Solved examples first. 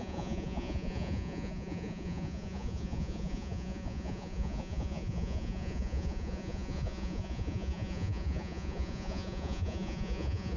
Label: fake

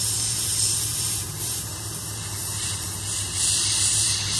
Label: fake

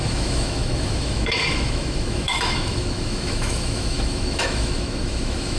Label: fake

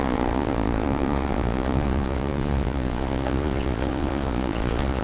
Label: fake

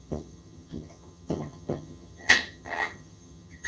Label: fake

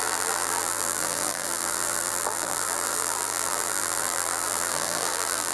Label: fake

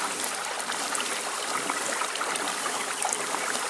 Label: real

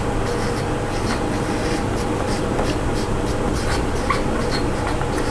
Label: real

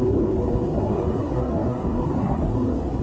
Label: fake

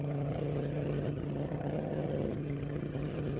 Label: fake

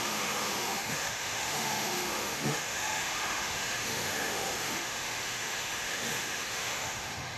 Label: fake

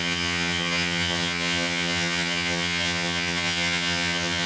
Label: fake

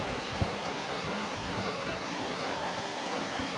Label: fake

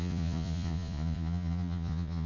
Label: fake